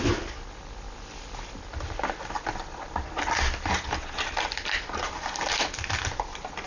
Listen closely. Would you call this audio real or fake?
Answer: real